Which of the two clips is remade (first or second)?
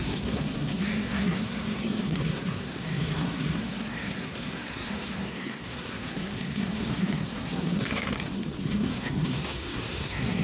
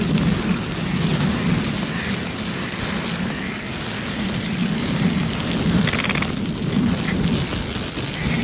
first